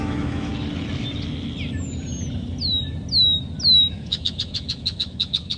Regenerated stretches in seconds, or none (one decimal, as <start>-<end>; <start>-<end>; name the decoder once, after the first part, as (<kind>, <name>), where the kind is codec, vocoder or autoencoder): 0.0-0.5 (autoencoder, DAC-VAE); 3.8-5.6